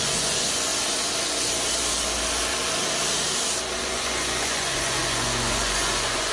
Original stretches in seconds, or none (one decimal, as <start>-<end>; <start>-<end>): 0.7-3.8